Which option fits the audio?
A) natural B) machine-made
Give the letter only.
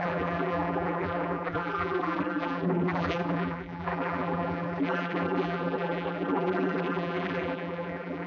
B